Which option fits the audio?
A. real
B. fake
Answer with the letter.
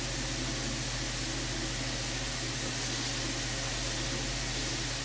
A